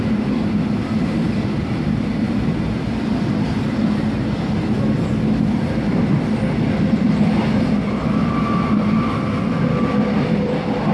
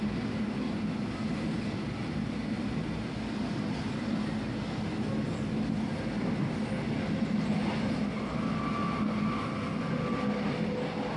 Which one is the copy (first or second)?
first